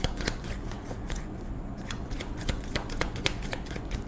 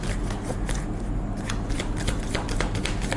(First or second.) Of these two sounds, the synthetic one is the first